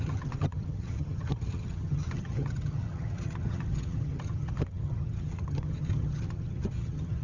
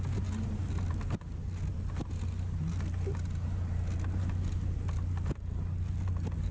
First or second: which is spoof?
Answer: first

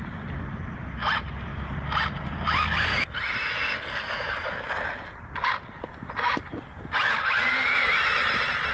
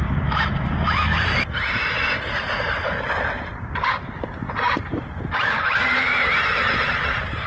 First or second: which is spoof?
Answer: second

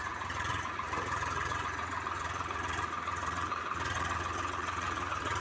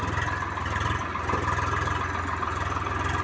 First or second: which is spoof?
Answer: first